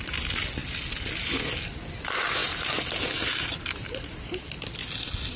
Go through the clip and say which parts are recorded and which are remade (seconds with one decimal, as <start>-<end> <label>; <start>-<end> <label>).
0.0-5.4 recorded